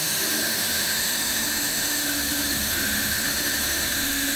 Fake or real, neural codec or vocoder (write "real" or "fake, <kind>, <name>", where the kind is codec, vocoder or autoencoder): fake, autoencoder, DAC-VAE